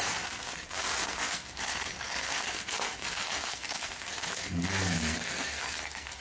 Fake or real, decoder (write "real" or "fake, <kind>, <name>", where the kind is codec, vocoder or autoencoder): fake, codec, SNAC